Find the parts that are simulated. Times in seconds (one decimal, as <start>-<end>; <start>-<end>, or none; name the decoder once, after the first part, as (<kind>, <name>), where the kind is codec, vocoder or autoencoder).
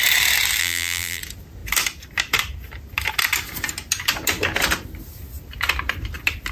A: 0.6-1.2 (vocoder, BigVGAN v2)